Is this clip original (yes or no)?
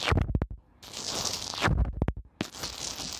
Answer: yes